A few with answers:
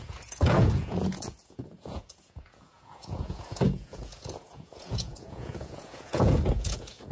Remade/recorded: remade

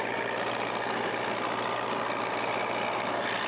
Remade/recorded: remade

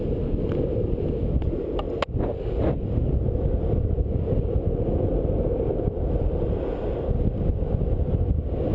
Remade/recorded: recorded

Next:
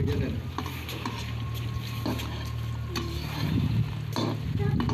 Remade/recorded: recorded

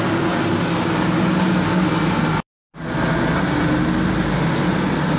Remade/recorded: recorded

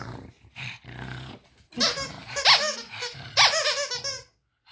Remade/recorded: recorded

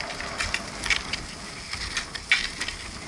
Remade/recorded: recorded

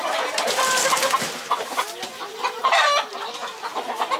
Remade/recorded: recorded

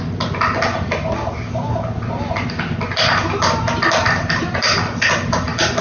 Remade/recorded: recorded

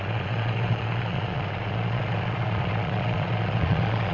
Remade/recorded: remade